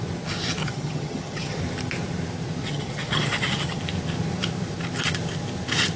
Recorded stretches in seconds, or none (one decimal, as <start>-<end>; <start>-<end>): 0.0-0.6; 1.6-2.6; 3.8-6.0